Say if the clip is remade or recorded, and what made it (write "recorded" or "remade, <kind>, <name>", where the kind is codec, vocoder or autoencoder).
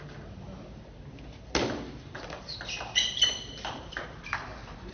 recorded